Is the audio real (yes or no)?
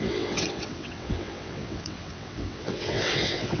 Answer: no